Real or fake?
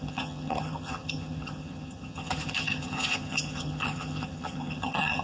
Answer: fake